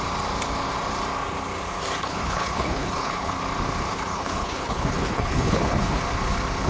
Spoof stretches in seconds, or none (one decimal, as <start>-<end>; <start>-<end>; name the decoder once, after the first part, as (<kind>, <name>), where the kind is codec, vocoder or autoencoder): 2.0-3.4 (codec, HILCodec); 3.9-6.0